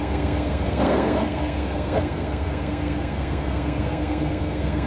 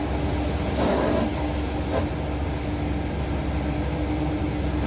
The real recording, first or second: second